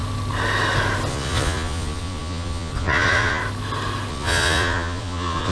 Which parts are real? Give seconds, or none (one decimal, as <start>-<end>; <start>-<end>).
0.0-1.1; 3.4-4.1